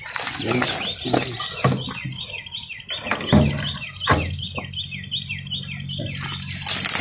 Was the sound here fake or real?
real